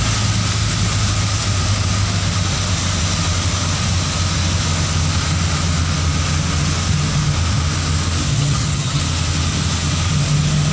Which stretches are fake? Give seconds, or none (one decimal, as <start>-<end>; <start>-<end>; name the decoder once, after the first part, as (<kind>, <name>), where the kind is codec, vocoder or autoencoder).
8.3-9.0 (vocoder, HiFi-GAN)